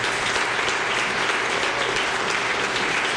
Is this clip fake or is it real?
real